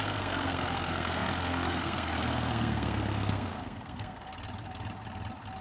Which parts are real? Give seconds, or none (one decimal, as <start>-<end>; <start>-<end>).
4.3-5.6